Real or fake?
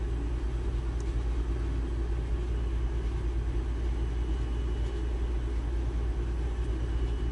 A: real